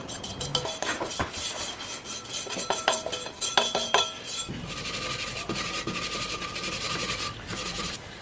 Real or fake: real